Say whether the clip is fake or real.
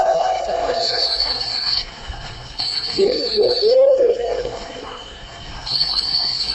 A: fake